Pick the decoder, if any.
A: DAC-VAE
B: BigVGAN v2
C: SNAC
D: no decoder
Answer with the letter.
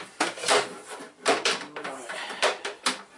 D